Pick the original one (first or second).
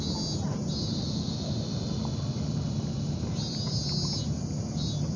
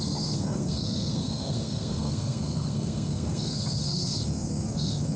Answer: first